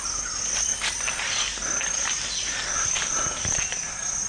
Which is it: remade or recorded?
recorded